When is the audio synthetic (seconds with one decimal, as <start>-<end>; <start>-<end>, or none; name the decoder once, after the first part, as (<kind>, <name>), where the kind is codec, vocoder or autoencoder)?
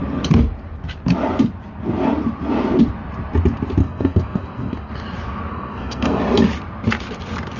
3.8-4.9 (codec, SNAC); 5.5-6.2